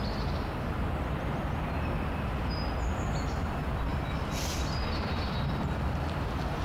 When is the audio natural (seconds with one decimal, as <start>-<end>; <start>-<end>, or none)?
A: 0.0-3.9; 5.2-6.6